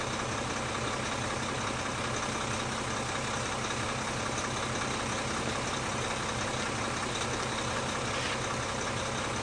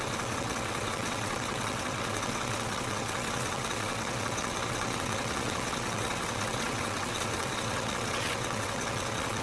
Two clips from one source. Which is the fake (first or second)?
second